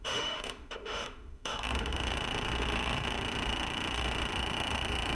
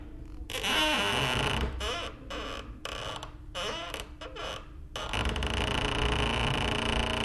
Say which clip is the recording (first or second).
second